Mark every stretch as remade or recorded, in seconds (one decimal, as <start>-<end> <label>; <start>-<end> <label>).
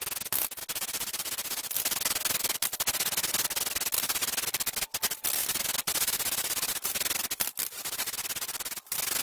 0.0-9.2 recorded